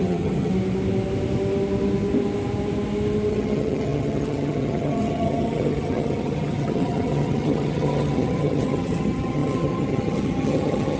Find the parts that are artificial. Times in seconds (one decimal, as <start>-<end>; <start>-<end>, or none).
0.0-0.5; 3.3-11.0